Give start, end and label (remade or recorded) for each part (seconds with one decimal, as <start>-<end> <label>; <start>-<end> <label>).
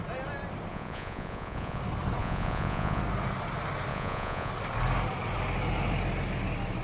0.0-0.7 recorded; 0.7-1.8 remade; 1.8-2.2 recorded; 2.2-3.0 remade; 3.0-3.9 recorded; 3.9-4.5 remade; 4.5-6.8 recorded